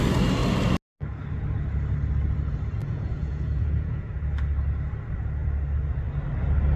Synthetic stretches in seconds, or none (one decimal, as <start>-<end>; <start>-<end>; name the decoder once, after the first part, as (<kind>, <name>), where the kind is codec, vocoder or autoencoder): 2.8-4.1 (vocoder, Vocos)